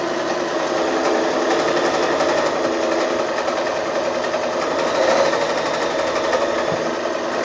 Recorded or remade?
recorded